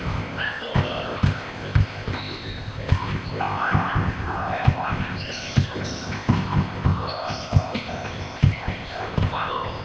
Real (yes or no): no